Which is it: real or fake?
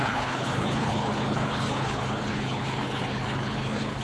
fake